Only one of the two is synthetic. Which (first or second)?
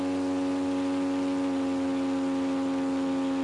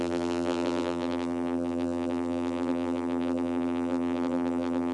second